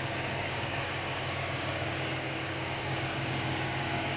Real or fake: fake